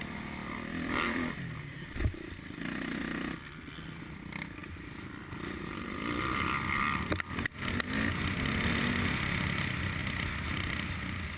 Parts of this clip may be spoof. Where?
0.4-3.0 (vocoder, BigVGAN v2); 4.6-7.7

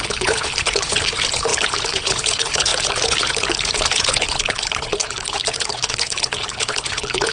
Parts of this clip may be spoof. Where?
0.0-7.3 (codec, HILCodec)

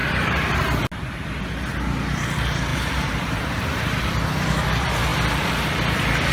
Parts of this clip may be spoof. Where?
0.0-0.6 (vocoder, BigVGAN v2); 2.7-4.0

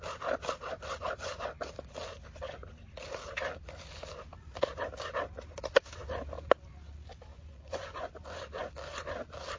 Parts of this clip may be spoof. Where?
7.3-8.1 (vocoder, Vocos)

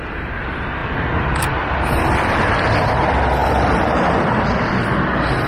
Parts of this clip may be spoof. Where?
0.8-2.7 (vocoder, BigVGAN v2); 3.4-4.4